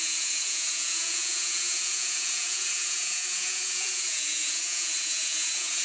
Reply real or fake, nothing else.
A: fake